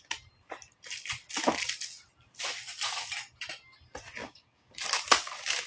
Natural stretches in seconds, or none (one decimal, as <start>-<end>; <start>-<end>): 0.0-4.2; 4.7-5.7

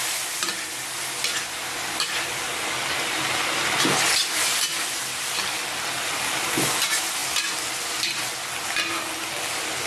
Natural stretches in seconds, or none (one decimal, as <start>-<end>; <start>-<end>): 0.0-9.9

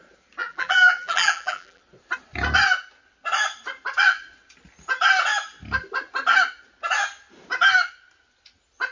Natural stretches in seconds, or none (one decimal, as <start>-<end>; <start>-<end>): 0.0-0.4; 1.8-8.9

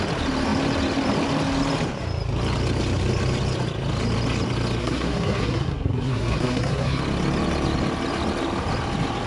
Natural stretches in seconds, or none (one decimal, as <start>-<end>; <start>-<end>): 0.0-4.8; 7.0-9.3